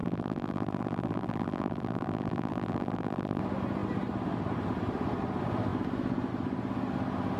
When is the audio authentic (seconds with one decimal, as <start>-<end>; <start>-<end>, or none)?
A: 3.4-7.4